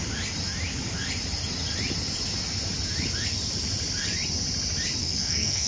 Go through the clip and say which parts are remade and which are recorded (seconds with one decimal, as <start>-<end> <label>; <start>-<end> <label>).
0.0-5.0 recorded; 5.0-5.7 remade